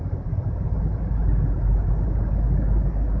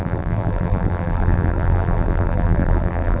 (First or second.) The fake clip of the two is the second